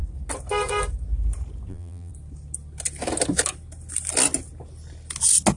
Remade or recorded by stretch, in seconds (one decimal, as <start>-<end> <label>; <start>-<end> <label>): 0.0-1.7 recorded; 1.7-2.1 remade; 2.1-5.6 recorded